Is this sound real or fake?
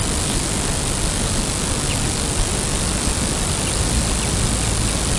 real